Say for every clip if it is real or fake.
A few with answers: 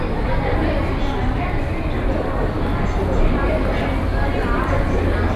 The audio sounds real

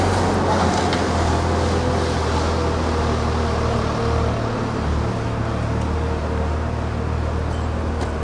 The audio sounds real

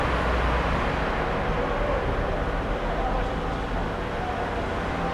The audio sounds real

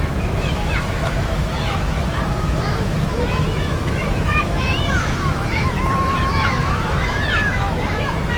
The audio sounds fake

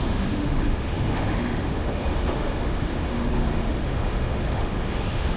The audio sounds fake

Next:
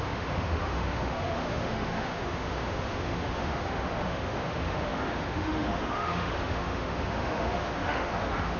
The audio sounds fake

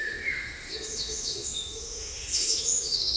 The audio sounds fake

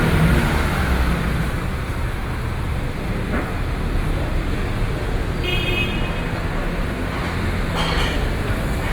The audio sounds real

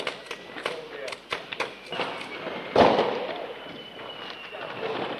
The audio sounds real